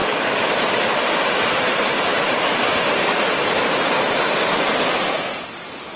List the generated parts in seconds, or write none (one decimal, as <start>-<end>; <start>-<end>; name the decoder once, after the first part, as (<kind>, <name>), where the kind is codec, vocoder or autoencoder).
none